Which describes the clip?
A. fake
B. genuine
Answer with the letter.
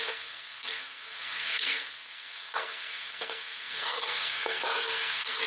A